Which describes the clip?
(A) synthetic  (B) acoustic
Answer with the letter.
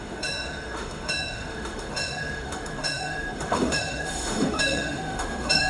A